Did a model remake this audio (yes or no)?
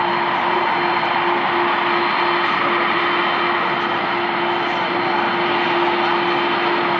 no